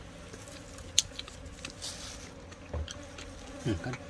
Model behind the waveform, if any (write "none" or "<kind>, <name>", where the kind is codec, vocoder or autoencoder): none